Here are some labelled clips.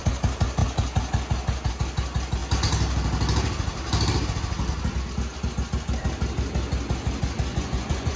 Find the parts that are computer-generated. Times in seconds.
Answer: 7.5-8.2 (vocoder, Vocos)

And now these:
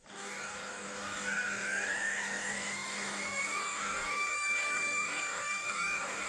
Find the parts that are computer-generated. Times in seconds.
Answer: 0.0-6.3 (codec, DAC)

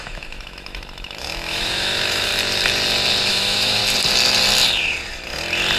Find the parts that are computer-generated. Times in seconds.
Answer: 0.0-2.3 (autoencoder, DAC-VAE); 3.3-3.8

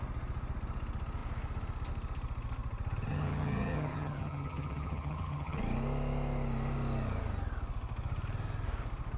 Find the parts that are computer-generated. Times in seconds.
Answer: 3.1-5.6 (vocoder, HiFi-GAN)

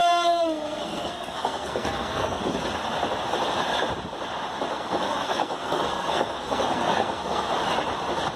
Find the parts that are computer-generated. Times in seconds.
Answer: 0.0-2.4 (codec, SNAC); 4.7-7.5